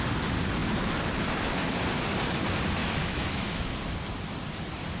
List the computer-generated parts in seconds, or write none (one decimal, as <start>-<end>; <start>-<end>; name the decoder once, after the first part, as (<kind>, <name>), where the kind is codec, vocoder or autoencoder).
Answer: 2.8-3.6 (autoencoder, DAC-VAE)